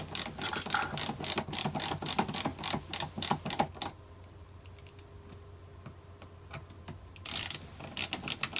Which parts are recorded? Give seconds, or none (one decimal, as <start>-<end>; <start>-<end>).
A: 0.0-8.6